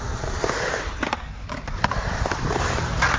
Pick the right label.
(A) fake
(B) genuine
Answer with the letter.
A